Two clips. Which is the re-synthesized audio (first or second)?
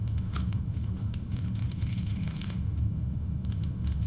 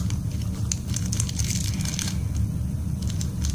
first